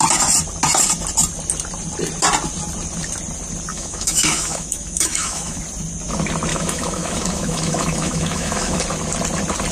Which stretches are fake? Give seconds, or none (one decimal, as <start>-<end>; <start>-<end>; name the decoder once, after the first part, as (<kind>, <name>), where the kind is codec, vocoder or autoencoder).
3.7-5.6 (autoencoder, DAC-VAE); 6.5-8.8